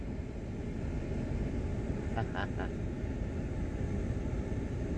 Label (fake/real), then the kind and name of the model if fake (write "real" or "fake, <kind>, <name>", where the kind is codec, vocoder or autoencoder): real